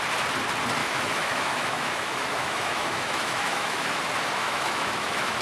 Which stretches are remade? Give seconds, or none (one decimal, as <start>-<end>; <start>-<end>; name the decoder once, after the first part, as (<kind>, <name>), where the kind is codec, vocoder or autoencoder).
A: 0.8-4.0 (autoencoder, DAC-VAE); 4.4-5.4